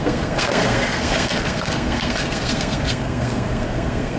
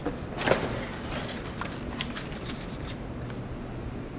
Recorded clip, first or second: second